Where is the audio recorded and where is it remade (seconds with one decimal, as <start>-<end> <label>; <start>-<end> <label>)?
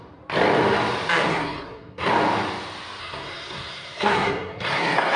0.0-1.3 recorded; 1.3-2.1 remade; 2.1-3.0 recorded; 3.0-5.2 remade